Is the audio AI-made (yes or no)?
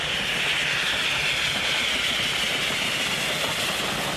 no